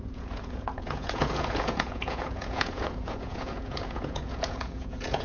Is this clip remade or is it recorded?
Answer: remade